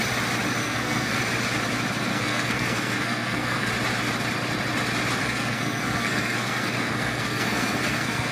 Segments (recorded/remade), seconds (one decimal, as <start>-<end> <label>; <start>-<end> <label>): 0.0-0.6 recorded; 0.6-1.2 remade; 1.2-2.1 recorded; 2.1-3.7 remade; 3.7-5.2 recorded; 5.2-8.3 remade